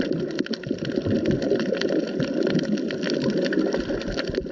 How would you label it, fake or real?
real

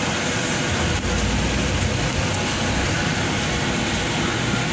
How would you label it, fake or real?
real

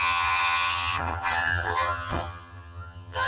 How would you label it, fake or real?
fake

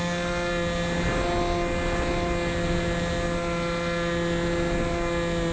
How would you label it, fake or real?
real